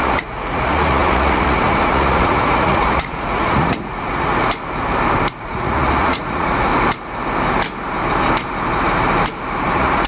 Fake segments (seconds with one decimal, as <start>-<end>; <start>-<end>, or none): 0.0-4.4; 5.4-6.7; 9.7-10.1